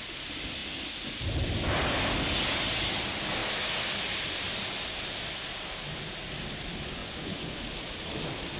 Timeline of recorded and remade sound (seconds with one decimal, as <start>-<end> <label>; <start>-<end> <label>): 0.0-7.0 recorded; 7.0-7.6 remade; 7.6-8.6 recorded